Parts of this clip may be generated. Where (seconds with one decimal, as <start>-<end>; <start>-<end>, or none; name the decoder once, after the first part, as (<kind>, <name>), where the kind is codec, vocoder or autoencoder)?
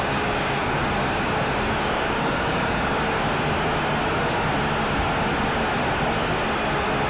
0.0-0.8 (codec, DAC); 1.8-2.9